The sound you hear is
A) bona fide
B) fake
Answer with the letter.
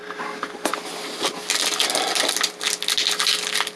A